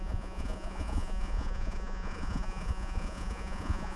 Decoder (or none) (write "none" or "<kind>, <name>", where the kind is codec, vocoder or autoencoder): vocoder, Vocos